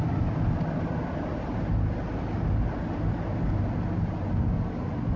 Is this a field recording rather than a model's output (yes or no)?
yes